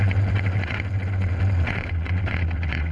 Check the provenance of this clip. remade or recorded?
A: remade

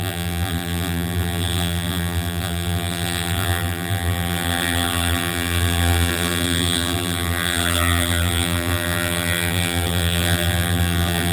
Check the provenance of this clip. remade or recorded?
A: remade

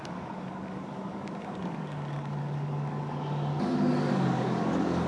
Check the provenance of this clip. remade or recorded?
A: remade